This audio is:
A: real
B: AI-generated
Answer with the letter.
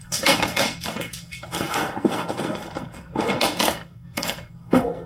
B